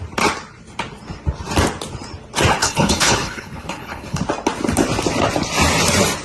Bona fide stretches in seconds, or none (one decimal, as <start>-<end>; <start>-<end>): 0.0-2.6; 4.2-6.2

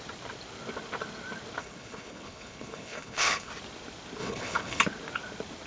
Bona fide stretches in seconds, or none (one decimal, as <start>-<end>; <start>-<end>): 0.0-1.6; 3.5-4.2; 4.8-5.7

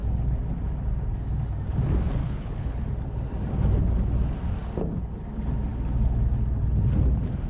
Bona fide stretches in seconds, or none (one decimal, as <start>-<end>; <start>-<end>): 0.0-2.2; 2.8-7.5